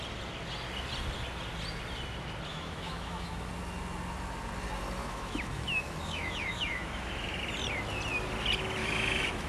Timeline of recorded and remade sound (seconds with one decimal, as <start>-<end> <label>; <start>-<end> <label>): 0.0-2.5 recorded; 2.5-3.5 remade; 3.5-5.0 recorded; 5.0-7.4 remade; 7.4-8.8 recorded; 8.8-9.5 remade

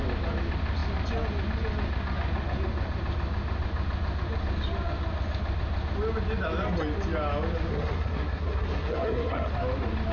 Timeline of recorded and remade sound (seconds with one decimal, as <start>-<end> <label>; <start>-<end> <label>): 0.0-7.7 recorded; 7.7-9.5 remade; 9.5-10.1 recorded

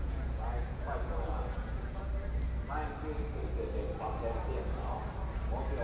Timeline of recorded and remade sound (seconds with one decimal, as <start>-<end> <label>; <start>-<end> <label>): 0.0-2.1 remade; 2.1-5.8 recorded

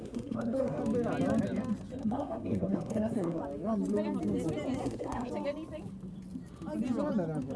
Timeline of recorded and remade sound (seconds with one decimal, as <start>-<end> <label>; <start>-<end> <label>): 0.0-0.8 remade; 0.8-2.0 recorded; 2.0-3.4 remade; 3.4-4.8 recorded; 4.8-5.3 remade; 5.3-7.6 recorded

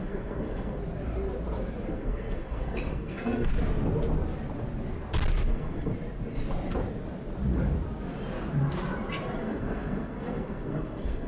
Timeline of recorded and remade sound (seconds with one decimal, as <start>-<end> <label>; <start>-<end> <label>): 0.0-0.8 remade; 0.8-1.9 recorded; 1.9-3.5 remade; 3.5-5.5 recorded; 5.5-5.9 remade; 5.9-9.4 recorded; 9.4-11.3 remade

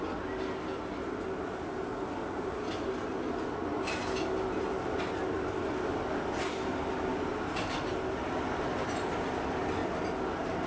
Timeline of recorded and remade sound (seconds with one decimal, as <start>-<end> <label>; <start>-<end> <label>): 0.0-10.7 recorded

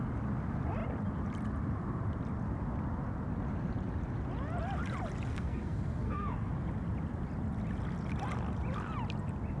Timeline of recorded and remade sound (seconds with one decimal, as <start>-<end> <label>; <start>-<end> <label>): 0.0-5.3 recorded; 5.3-6.5 remade; 6.5-9.6 recorded

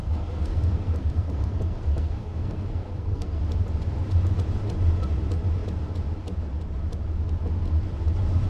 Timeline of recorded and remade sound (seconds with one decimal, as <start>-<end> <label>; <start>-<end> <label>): 0.0-3.4 remade; 3.4-8.5 recorded